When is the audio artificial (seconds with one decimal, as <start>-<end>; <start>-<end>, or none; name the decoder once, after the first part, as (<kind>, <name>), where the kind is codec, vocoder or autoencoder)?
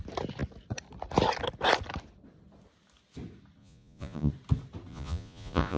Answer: 3.6-4.3 (vocoder, Vocos); 4.9-5.8